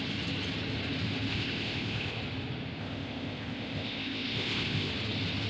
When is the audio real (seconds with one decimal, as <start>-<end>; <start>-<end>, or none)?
0.0-1.3; 2.2-2.8; 4.9-5.5